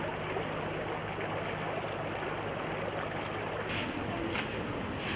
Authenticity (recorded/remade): recorded